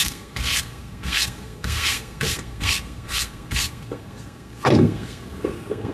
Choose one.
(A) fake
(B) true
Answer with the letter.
A